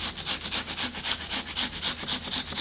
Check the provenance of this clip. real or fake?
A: real